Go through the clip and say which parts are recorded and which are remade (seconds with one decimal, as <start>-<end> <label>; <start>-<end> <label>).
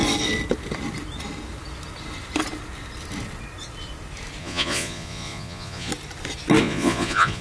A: 0.0-4.4 recorded; 4.4-5.9 remade; 5.9-6.6 recorded; 6.6-7.4 remade